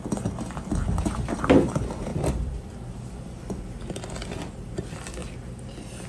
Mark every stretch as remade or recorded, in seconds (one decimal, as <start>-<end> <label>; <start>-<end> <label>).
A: 0.0-2.1 recorded; 2.1-3.7 remade; 3.7-5.2 recorded; 5.2-6.1 remade